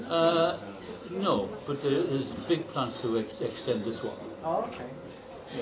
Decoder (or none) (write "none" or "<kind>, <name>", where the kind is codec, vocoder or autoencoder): none